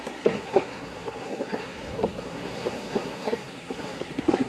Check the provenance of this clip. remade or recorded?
remade